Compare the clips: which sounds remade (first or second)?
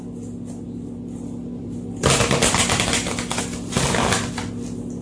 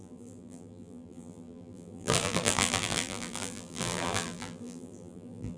second